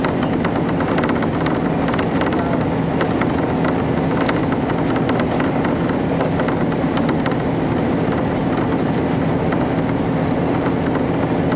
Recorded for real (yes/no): yes